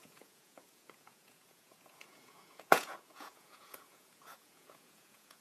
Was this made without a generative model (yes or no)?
no